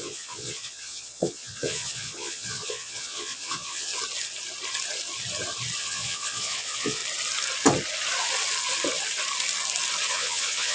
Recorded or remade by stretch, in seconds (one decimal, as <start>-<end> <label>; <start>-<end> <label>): 0.0-3.9 remade; 3.9-5.8 recorded; 5.8-7.0 remade; 7.0-10.1 recorded; 10.1-10.7 remade